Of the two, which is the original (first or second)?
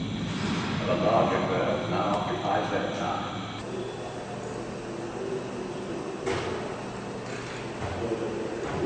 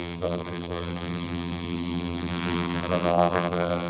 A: first